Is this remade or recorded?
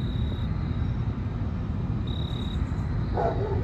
recorded